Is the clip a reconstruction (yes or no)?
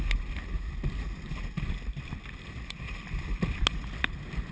no